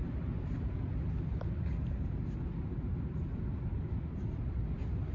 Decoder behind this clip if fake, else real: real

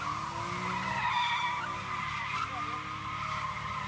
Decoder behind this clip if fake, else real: real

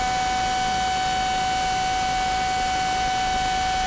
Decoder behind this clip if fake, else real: real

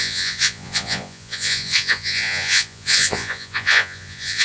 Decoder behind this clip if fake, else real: fake, vocoder, Vocos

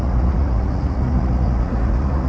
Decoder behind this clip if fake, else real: fake, vocoder, Vocos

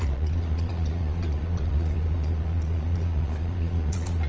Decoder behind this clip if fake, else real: fake, vocoder, Vocos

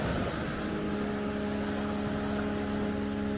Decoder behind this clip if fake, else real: real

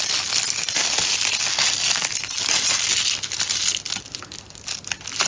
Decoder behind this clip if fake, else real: real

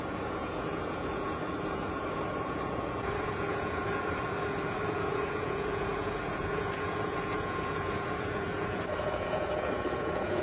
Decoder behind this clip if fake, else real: fake, vocoder, Vocos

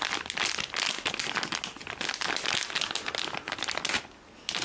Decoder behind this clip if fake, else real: real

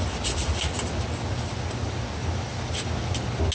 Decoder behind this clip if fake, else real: real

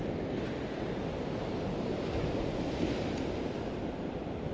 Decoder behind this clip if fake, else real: real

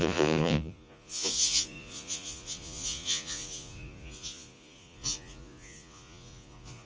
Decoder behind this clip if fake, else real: fake, vocoder, Vocos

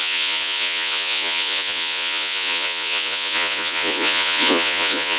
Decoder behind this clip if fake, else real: fake, vocoder, Vocos